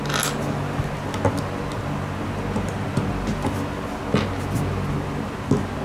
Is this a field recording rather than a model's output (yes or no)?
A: yes